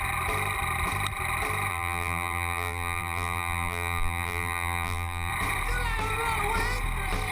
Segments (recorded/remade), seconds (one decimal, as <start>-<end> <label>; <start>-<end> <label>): 0.0-1.7 recorded; 1.7-5.3 remade; 5.3-7.3 recorded